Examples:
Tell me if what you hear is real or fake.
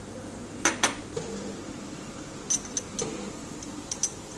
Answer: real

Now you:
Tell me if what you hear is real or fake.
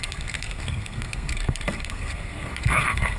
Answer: fake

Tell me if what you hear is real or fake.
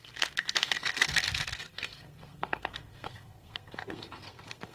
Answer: fake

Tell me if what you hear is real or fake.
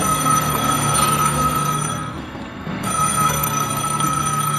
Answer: fake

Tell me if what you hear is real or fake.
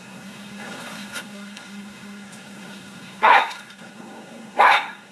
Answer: fake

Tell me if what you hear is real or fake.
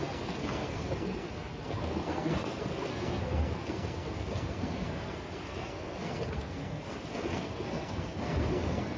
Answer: fake